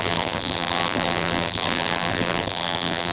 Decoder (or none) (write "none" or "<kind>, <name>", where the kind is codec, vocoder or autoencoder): vocoder, BigVGAN v2